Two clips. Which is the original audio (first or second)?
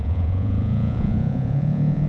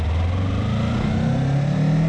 second